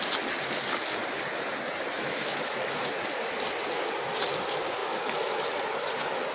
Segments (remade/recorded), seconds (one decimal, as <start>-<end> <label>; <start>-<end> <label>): 0.0-2.0 recorded; 2.0-2.6 remade; 2.6-4.8 recorded; 4.8-5.4 remade; 5.4-6.3 recorded

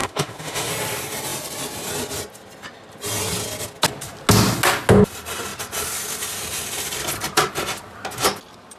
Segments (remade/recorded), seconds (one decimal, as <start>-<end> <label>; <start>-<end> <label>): 0.0-0.7 remade; 0.7-8.8 recorded

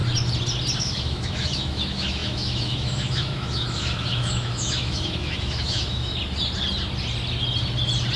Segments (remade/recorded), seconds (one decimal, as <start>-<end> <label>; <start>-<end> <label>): 0.0-0.8 recorded; 0.8-6.1 remade; 6.1-8.2 recorded

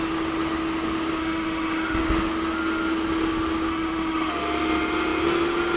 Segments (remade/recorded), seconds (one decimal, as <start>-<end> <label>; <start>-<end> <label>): 0.0-1.2 recorded; 1.2-2.0 remade; 2.0-3.7 recorded; 3.7-4.3 remade; 4.3-5.8 recorded

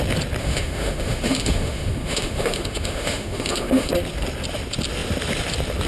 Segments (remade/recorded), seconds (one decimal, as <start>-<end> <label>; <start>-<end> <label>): 0.0-0.4 recorded; 0.4-3.9 remade; 3.9-5.9 recorded

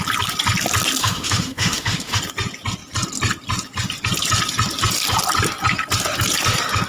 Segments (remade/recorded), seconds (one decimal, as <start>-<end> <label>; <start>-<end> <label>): 0.0-1.0 recorded; 1.0-2.2 remade; 2.2-6.9 recorded